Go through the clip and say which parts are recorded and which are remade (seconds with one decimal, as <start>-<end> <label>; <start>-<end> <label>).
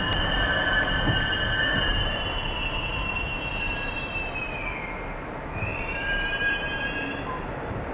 0.0-1.9 recorded; 1.9-4.5 remade; 4.5-5.7 recorded; 5.7-7.3 remade; 7.3-7.9 recorded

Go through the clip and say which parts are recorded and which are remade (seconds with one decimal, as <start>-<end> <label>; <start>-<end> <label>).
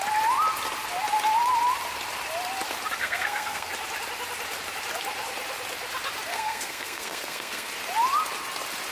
0.0-3.0 recorded; 3.0-3.7 remade; 3.7-6.3 recorded; 6.3-7.7 remade; 7.7-8.9 recorded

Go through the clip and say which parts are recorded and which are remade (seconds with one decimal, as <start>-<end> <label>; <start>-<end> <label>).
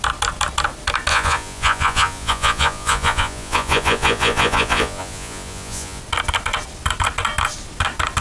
0.0-1.1 recorded; 1.1-6.0 remade; 6.0-8.2 recorded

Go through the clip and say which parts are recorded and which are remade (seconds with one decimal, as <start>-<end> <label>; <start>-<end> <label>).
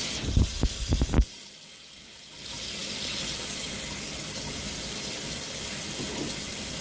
0.0-6.8 recorded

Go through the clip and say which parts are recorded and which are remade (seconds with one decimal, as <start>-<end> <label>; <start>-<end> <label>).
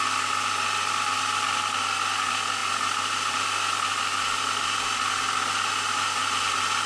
0.0-6.9 recorded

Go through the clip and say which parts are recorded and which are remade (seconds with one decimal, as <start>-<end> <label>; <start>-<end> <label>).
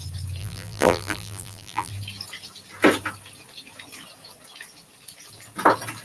0.0-0.4 recorded; 0.4-1.9 remade; 1.9-6.0 recorded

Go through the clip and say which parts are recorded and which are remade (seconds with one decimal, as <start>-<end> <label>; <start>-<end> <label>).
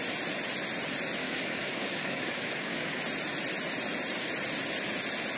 0.0-1.2 recorded; 1.2-3.0 remade; 3.0-5.4 recorded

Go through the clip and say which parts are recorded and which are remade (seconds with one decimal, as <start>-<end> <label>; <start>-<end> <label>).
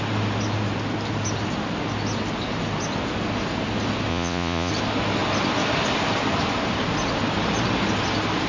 0.0-4.1 recorded; 4.1-4.7 remade; 4.7-8.5 recorded